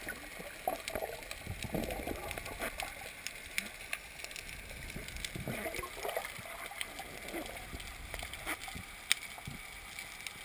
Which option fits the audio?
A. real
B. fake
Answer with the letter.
A